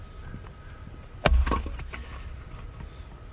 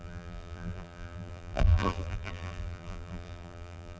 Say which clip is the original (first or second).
first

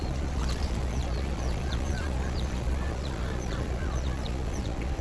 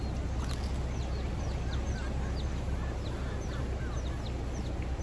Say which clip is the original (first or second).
second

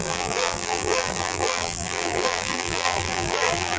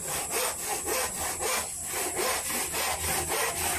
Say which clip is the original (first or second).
second